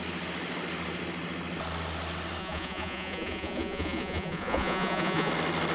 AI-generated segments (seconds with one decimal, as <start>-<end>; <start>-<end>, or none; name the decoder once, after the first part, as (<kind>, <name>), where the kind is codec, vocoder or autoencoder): 2.4-5.3 (vocoder, Vocos)